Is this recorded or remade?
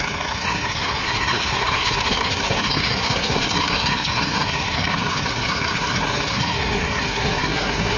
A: remade